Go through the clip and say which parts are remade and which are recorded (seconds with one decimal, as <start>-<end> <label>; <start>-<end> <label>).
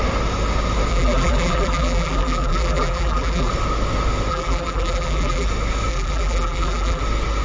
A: 0.0-0.9 recorded; 0.9-3.5 remade; 3.5-4.3 recorded; 4.3-5.5 remade; 5.5-5.9 recorded; 5.9-7.0 remade; 7.0-7.4 recorded